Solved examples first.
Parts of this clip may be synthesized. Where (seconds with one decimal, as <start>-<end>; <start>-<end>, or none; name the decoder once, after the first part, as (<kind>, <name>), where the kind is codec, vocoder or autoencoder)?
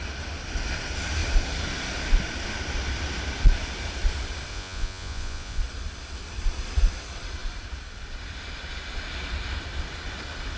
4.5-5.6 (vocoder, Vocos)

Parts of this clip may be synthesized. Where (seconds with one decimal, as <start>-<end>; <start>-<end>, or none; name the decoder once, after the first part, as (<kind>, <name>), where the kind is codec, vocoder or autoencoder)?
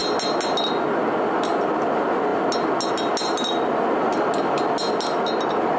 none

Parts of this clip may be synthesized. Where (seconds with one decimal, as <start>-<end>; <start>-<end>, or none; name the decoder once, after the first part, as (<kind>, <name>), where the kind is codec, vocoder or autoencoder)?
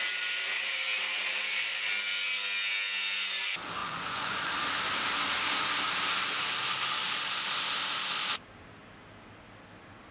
3.8-4.5 (vocoder, Vocos)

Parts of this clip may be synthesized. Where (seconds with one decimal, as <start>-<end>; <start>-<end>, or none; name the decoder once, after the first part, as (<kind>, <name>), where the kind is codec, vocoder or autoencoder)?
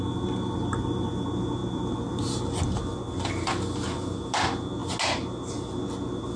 none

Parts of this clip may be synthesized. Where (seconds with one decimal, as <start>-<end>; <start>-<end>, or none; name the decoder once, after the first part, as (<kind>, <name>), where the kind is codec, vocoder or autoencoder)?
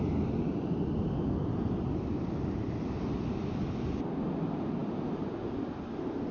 none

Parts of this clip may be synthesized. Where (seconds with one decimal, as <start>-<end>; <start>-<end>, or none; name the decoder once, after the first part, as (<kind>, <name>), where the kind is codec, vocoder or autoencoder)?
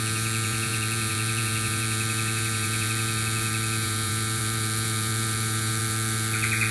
0.0-6.7 (vocoder, Vocos)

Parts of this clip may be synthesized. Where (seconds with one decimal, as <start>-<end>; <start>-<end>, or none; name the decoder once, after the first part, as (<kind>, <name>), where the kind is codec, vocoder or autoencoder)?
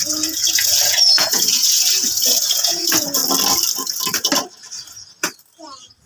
0.0-3.2 (vocoder, Vocos)